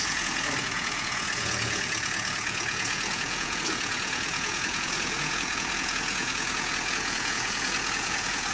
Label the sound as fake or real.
fake